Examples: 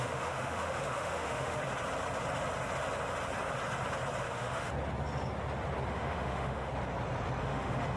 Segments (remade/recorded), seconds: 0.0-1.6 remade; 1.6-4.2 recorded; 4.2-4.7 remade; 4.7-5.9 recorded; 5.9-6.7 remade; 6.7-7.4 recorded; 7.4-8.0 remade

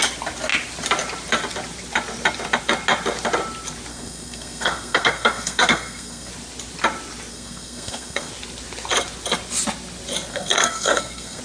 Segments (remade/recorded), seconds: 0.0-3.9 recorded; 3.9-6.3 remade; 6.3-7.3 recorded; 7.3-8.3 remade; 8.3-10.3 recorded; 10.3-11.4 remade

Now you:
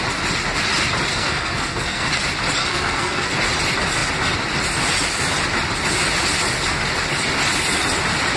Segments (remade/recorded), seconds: 0.0-1.1 recorded; 1.1-2.1 remade; 2.1-2.6 recorded; 2.6-3.3 remade; 3.3-8.4 recorded

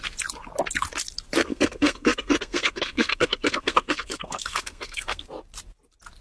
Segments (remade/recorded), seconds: 0.0-1.5 recorded; 1.5-5.2 remade; 5.2-6.2 recorded

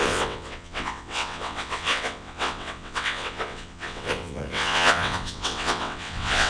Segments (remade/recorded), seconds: 0.0-6.5 remade